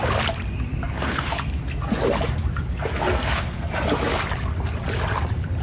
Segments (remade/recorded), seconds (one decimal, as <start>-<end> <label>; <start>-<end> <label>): 0.0-0.7 recorded; 0.7-1.5 remade; 1.5-3.1 recorded; 3.1-3.7 remade; 3.7-5.6 recorded